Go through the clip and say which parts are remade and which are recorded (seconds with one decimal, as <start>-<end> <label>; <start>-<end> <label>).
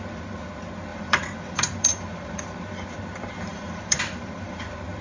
0.0-0.9 recorded; 0.9-2.4 remade; 2.4-3.5 recorded; 3.5-4.6 remade; 4.6-5.0 recorded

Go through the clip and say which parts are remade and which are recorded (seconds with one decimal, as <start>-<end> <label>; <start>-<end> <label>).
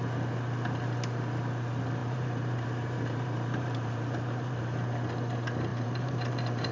0.0-2.0 recorded; 2.0-4.6 remade; 4.6-5.7 recorded; 5.7-6.7 remade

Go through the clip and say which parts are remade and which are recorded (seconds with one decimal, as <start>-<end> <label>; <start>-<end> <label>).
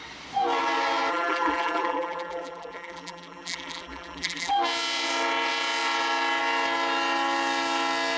0.0-1.1 recorded; 1.1-4.5 remade; 4.5-8.2 recorded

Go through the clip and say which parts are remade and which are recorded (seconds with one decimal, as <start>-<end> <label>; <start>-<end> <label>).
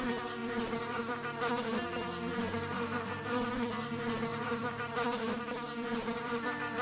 0.0-0.4 recorded; 0.4-1.0 remade; 1.0-4.3 recorded; 4.3-6.3 remade; 6.3-6.8 recorded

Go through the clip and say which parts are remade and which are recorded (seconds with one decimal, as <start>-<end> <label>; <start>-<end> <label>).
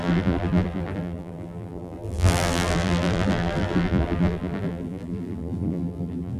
0.0-6.4 remade